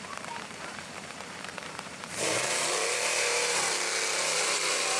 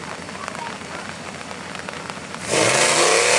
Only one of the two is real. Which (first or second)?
second